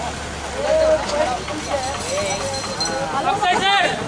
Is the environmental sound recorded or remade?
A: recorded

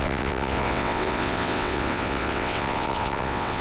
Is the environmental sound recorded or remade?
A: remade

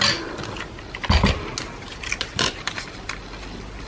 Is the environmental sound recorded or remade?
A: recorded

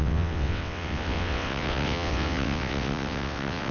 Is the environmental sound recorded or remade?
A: remade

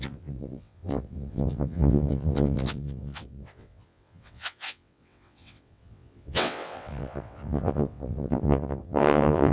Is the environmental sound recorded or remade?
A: remade